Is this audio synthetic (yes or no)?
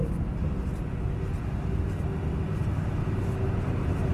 no